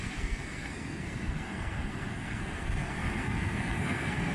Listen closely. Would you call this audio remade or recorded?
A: remade